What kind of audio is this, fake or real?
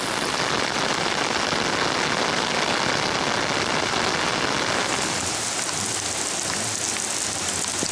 real